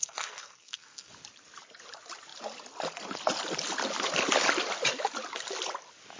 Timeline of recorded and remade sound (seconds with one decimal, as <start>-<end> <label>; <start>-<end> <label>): 0.0-1.1 remade; 1.1-6.2 recorded